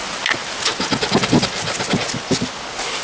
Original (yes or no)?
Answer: yes